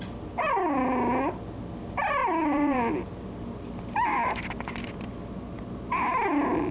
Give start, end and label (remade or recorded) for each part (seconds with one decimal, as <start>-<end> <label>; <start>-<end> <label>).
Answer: 0.0-2.2 recorded; 2.2-4.7 remade; 4.7-6.7 recorded